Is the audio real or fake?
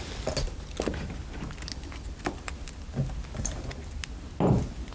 real